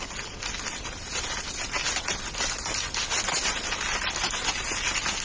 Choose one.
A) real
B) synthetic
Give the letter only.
A